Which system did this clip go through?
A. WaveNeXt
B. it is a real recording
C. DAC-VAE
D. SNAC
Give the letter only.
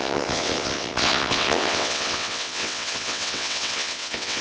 A